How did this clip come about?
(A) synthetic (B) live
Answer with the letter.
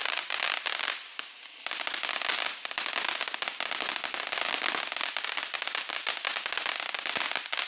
B